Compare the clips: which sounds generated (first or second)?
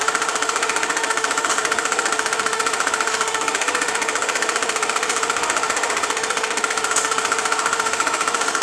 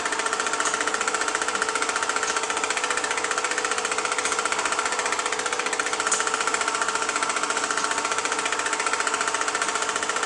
first